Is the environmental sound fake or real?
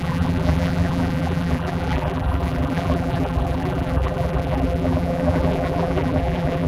fake